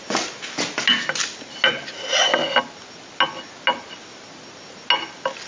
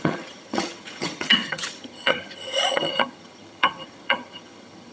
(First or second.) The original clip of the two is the first